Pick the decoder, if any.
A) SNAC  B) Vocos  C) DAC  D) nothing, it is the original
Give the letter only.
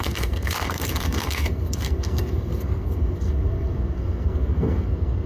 A